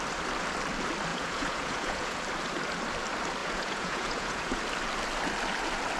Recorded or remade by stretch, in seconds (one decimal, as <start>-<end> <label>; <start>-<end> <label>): 0.0-1.1 recorded; 1.1-2.2 remade; 2.2-3.4 recorded; 3.4-4.6 remade; 4.6-6.0 recorded

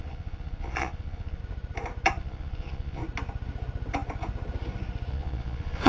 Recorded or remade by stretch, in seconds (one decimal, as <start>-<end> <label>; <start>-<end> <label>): 0.0-1.4 remade; 1.4-2.2 recorded; 2.2-3.0 remade; 3.0-5.1 recorded; 5.1-5.9 remade

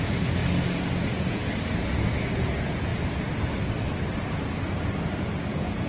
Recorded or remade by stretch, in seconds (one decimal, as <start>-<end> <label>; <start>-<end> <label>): 0.0-0.4 remade; 0.4-1.0 recorded; 1.0-1.4 remade; 1.4-2.4 recorded; 2.4-2.9 remade; 2.9-5.5 recorded; 5.5-5.9 remade